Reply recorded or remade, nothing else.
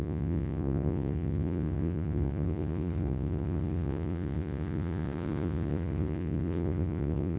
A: remade